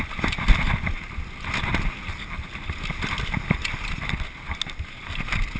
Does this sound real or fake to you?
real